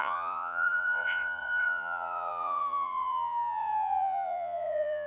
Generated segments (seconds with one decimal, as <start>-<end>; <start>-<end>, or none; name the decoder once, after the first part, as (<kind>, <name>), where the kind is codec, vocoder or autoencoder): 0.0-5.1 (vocoder, Vocos)